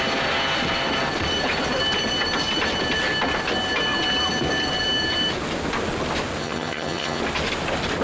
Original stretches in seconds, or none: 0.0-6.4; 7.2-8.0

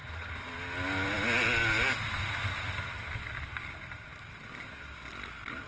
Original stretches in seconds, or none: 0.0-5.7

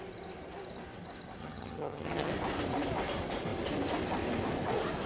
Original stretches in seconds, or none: 0.0-1.4; 2.3-5.1